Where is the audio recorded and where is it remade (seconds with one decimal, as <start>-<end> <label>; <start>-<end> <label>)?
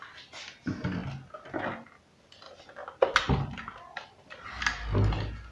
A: 0.0-5.5 recorded